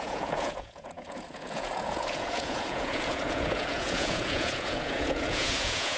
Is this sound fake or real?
fake